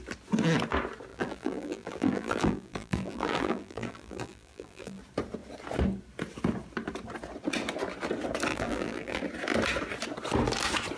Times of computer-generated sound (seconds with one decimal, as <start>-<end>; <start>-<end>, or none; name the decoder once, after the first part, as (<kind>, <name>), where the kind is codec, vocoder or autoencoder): 1.1-5.0 (vocoder, BigVGAN v2); 8.5-9.2

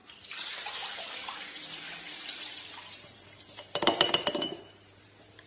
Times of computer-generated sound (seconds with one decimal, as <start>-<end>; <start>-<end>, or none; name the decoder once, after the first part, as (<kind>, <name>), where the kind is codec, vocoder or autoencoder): 0.0-5.5 (vocoder, BigVGAN v2)

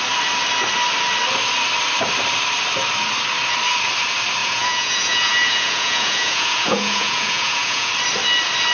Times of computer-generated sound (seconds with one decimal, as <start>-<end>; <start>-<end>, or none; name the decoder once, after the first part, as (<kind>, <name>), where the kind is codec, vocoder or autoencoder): 4.4-7.9 (vocoder, Vocos)

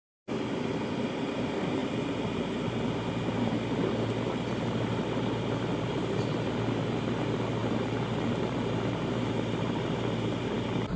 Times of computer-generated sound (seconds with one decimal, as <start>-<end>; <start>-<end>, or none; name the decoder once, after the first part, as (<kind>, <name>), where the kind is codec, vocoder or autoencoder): none

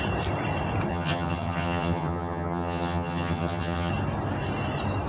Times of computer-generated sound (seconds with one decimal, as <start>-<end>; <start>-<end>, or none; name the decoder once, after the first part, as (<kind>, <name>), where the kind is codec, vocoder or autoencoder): 0.9-3.9 (vocoder, HiFi-GAN)

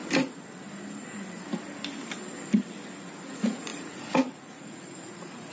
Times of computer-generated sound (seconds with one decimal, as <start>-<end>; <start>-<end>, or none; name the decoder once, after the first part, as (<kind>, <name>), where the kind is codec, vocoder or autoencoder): 3.3-5.5 (vocoder, Vocos)